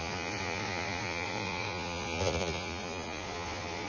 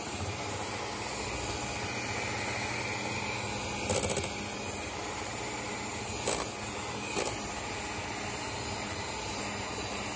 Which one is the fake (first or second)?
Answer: first